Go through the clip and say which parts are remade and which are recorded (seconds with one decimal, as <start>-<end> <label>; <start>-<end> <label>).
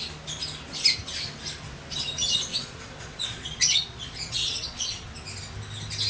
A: 0.0-2.5 recorded; 2.5-5.1 remade; 5.1-6.1 recorded